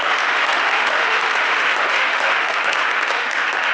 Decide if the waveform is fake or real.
fake